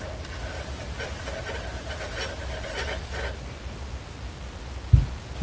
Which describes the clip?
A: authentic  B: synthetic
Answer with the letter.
A